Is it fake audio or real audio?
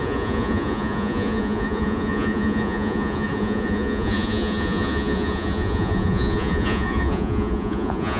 fake